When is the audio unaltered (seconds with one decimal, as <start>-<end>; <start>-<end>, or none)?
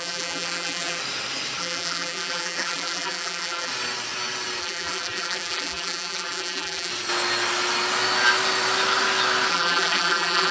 1.0-1.6; 3.7-4.6; 6.9-9.5